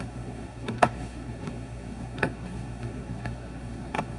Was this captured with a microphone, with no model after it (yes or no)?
no